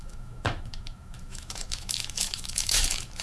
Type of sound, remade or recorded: remade